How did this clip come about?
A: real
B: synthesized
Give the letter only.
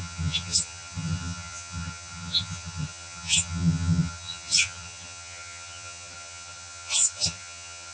B